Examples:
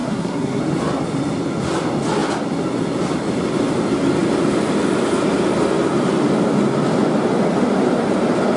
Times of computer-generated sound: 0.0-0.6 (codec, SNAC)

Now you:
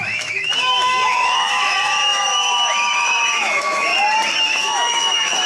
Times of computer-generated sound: 0.0-3.9 (autoencoder, DAC-VAE); 4.4-5.5

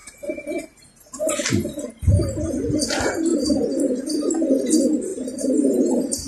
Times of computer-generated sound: 0.0-1.5 (vocoder, BigVGAN v2); 3.3-4.3; 5.1-6.3

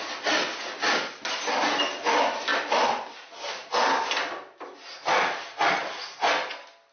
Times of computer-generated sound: none

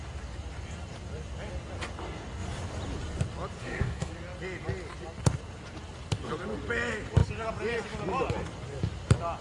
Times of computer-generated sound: 3.6-4.1 (codec, SNAC)